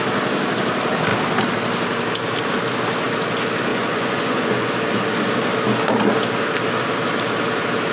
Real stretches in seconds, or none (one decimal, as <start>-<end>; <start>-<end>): 0.0-3.7; 4.7-7.9